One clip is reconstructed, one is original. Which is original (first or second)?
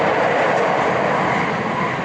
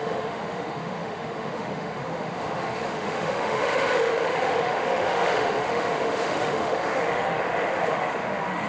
first